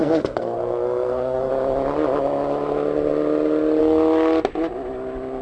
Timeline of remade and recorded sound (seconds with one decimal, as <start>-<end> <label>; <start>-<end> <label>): 0.0-1.5 remade; 1.5-5.4 recorded